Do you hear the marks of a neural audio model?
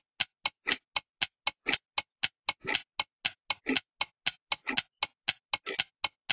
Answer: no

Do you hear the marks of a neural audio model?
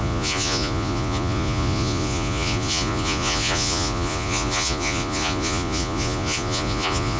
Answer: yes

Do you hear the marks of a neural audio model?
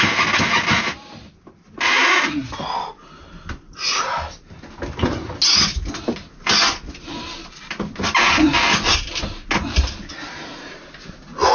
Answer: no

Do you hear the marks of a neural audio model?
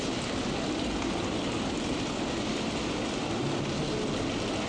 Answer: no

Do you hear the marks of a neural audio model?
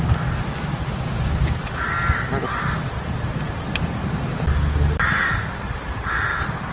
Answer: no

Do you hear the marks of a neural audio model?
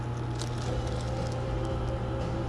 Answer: no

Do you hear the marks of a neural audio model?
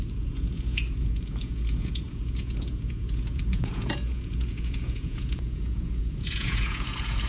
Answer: yes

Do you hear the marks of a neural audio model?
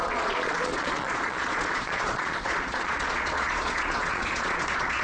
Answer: yes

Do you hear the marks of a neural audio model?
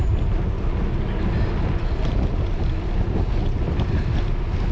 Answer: no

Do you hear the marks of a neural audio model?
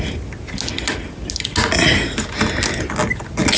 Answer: no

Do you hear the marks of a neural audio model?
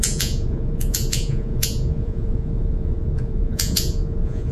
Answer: yes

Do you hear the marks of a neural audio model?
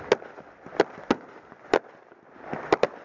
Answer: no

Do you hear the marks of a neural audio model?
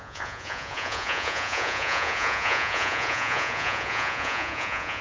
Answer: yes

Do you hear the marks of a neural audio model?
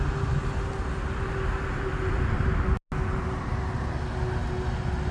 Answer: no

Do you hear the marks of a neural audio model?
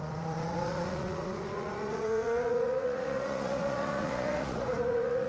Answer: yes